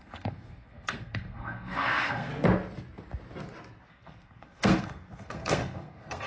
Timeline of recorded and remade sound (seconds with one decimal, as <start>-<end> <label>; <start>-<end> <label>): 0.0-2.3 remade; 2.3-3.9 recorded; 3.9-6.3 remade